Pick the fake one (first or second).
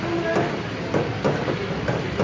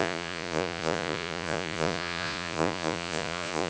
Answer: second